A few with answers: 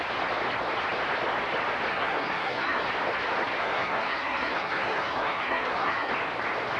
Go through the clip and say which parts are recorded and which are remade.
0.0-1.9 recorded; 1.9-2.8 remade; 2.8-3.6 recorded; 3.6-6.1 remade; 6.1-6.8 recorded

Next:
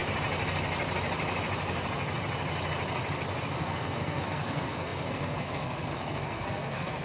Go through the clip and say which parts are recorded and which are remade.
0.0-3.6 recorded; 3.6-7.0 remade

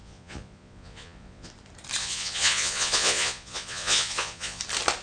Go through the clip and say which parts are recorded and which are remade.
0.0-1.5 remade; 1.5-2.0 recorded; 2.0-4.6 remade; 4.6-5.0 recorded

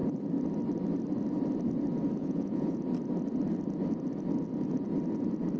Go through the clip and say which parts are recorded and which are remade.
0.0-2.2 recorded; 2.2-2.8 remade; 2.8-5.6 recorded

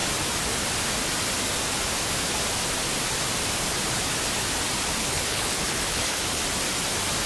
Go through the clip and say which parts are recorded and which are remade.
0.0-5.0 recorded; 5.0-6.4 remade; 6.4-7.3 recorded

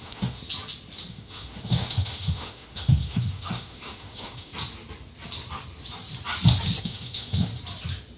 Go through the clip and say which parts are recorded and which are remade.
0.0-0.4 remade; 0.4-1.1 recorded; 1.1-4.5 remade; 4.5-6.8 recorded; 6.8-7.5 remade; 7.5-8.2 recorded

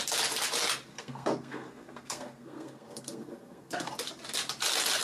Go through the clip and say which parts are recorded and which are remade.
0.0-0.9 recorded; 0.9-3.9 remade; 3.9-5.0 recorded